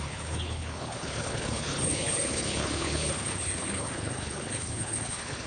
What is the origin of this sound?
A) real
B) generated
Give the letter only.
B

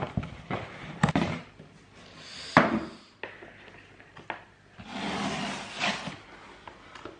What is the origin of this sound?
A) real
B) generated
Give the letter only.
A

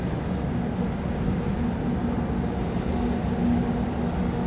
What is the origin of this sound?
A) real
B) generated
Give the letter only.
A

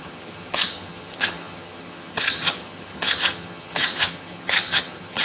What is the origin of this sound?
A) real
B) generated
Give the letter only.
B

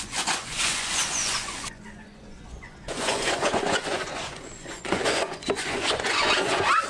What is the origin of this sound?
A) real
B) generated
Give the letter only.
B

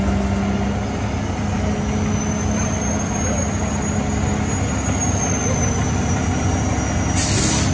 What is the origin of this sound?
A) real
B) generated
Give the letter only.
A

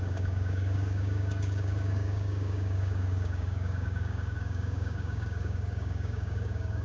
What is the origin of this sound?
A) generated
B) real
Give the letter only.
A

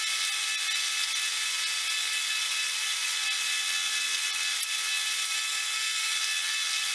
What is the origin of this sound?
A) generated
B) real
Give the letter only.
B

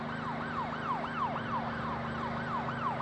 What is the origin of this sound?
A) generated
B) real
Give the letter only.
B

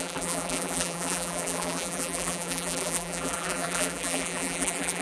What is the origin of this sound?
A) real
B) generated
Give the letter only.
B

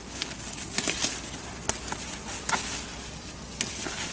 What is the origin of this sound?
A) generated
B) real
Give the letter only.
B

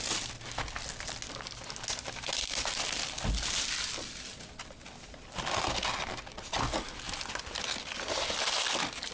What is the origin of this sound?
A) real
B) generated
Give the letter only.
A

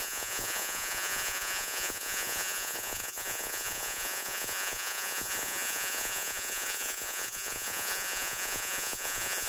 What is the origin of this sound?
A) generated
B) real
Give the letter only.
A